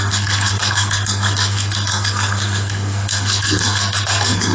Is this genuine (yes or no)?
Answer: no